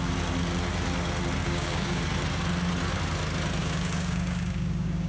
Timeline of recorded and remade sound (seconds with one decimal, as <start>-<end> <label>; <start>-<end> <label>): 0.0-1.4 recorded; 1.4-2.0 remade; 2.0-3.6 recorded; 3.6-5.1 remade